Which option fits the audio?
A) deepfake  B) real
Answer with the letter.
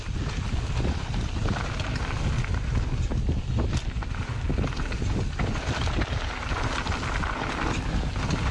B